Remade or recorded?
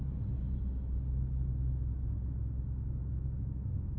recorded